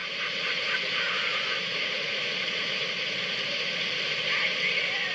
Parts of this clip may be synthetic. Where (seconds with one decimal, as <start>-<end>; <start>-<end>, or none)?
0.0-3.1